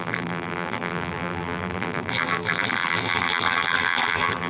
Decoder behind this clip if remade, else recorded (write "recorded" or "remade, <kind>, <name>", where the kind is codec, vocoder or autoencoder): remade, vocoder, BigVGAN v2